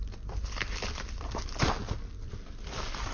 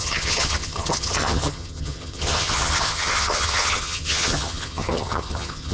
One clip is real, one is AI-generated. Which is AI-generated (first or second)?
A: second